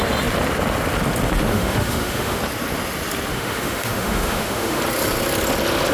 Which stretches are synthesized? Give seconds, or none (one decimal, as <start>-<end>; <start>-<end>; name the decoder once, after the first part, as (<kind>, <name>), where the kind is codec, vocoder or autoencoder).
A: 1.5-2.4 (autoencoder, DAC-VAE); 3.3-4.8